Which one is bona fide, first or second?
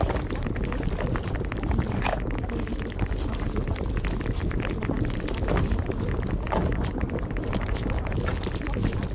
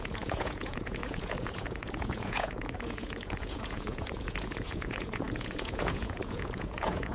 first